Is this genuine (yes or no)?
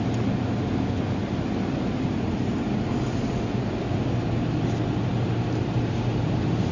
yes